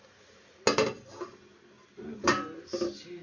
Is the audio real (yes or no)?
yes